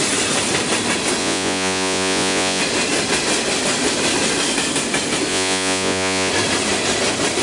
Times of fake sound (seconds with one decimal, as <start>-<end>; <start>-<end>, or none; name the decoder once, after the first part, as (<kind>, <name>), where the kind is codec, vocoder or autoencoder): 1.2-2.6 (vocoder, Vocos); 5.3-6.3